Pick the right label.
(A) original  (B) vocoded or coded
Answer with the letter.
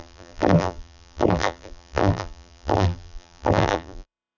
B